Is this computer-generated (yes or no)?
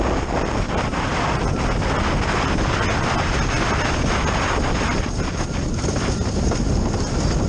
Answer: no